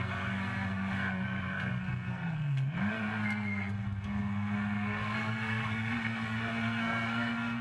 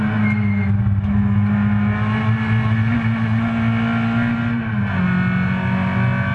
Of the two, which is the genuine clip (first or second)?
second